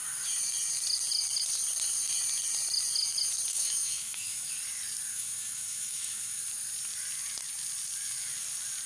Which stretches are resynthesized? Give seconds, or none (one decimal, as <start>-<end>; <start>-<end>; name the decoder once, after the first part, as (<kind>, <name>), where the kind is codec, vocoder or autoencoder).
3.5-4.5 (autoencoder, DAC-VAE); 5.1-6.4